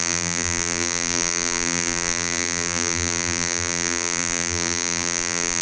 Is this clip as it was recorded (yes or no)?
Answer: no